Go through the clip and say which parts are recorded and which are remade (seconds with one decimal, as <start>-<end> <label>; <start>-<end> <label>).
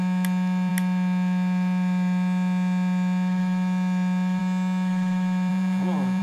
0.0-5.5 recorded; 5.5-6.2 remade